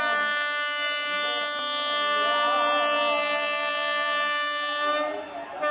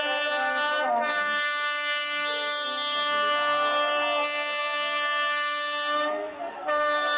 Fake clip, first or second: second